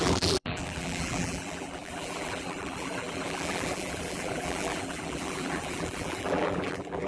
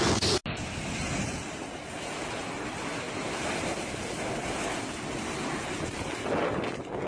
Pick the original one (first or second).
second